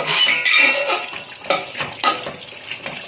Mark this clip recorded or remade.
recorded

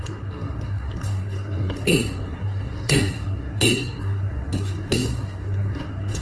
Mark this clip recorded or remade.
remade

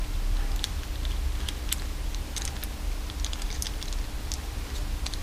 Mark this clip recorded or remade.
recorded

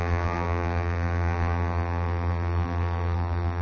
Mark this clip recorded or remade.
remade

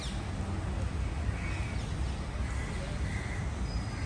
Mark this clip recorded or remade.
recorded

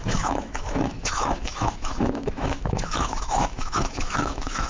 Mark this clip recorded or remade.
remade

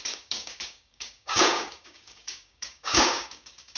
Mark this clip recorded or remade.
remade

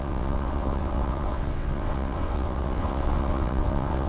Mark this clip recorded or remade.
remade